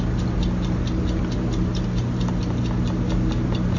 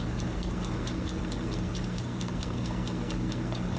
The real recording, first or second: first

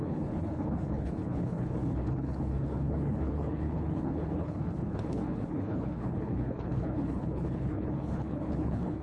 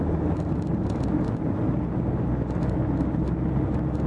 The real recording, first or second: second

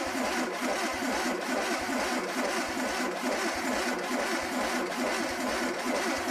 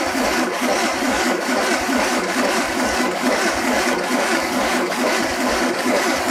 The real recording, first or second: first